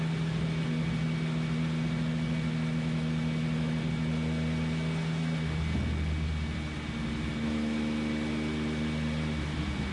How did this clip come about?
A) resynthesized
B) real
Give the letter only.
B